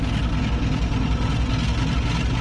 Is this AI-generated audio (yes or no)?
no